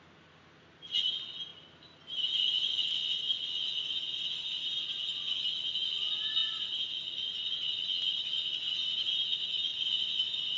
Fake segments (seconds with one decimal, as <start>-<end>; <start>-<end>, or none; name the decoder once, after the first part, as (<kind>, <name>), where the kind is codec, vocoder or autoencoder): 1.5-3.2 (vocoder, BigVGAN v2); 6.4-7.5; 9.7-10.6